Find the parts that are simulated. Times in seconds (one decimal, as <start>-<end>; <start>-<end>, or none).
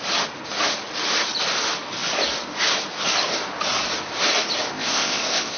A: 4.7-5.6